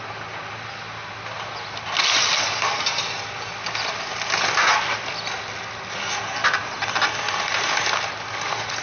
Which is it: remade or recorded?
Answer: recorded